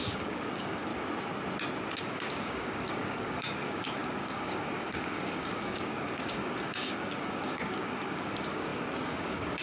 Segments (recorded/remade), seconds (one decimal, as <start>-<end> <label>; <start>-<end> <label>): 0.0-0.9 remade; 0.9-2.0 recorded; 2.0-9.6 remade